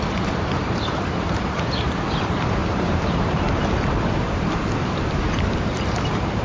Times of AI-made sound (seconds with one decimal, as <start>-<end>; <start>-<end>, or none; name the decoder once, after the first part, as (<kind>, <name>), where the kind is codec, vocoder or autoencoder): 0.0-6.4 (vocoder, BigVGAN v2)